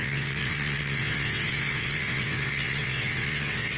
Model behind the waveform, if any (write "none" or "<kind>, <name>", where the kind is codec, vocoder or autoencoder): vocoder, WaveNeXt